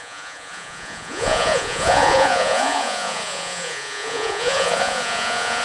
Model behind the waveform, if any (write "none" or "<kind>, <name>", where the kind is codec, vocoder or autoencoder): vocoder, Vocos